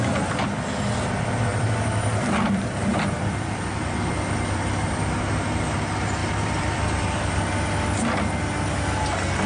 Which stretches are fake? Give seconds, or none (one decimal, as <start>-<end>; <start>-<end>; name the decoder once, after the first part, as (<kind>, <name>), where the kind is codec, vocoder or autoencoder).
1.5-5.6 (vocoder, BigVGAN v2); 6.2-7.4